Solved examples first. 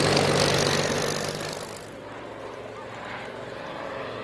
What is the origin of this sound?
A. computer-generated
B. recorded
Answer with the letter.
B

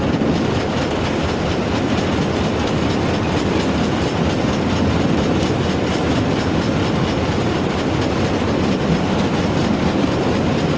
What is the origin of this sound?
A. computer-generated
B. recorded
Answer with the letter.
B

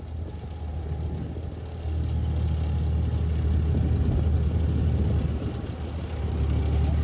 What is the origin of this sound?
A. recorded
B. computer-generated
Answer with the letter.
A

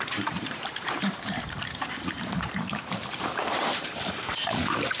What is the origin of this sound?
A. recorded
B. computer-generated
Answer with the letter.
B